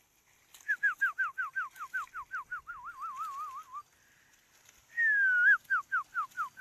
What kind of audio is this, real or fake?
real